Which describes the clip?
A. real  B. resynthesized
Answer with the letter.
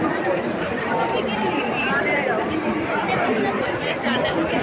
B